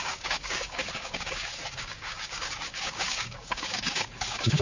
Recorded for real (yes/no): no